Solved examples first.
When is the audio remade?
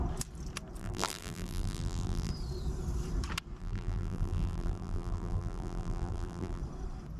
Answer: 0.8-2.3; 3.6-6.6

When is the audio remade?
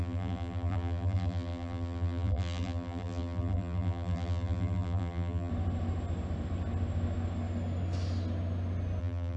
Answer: 0.0-5.5; 9.0-9.4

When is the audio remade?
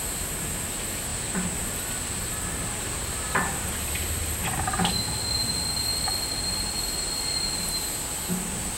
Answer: 1.1-3.8; 4.2-4.9; 5.9-6.7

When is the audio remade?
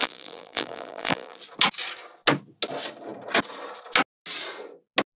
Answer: 0.0-1.4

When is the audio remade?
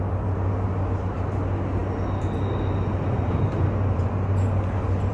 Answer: none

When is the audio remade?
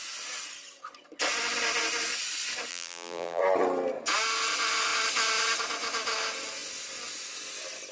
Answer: 2.7-3.4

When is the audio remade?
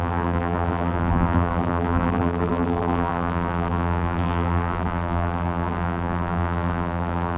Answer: 0.0-7.4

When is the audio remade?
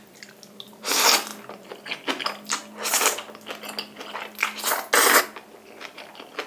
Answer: none